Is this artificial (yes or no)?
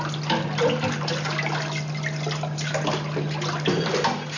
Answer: no